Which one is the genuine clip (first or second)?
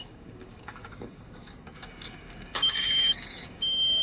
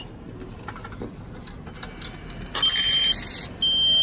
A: second